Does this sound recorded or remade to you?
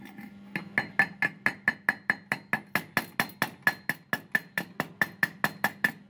recorded